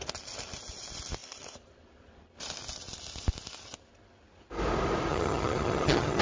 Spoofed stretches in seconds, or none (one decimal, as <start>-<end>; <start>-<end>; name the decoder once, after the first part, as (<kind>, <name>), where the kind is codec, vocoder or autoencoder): 5.1-6.2 (vocoder, HiFi-GAN)